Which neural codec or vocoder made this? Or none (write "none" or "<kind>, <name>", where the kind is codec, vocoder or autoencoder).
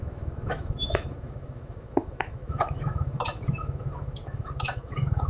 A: autoencoder, DAC-VAE